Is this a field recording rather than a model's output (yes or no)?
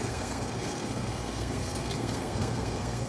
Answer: no